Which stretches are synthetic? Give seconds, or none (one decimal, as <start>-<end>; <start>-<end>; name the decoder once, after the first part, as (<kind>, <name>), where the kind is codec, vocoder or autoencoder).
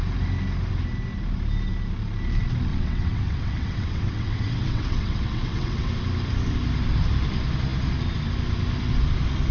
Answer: 2.7-5.9 (vocoder, WaveNeXt)